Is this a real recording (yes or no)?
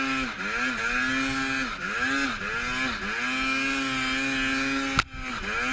yes